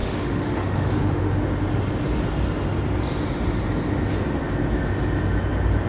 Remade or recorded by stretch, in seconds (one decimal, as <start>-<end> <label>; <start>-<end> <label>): 0.0-1.5 remade; 1.5-5.9 recorded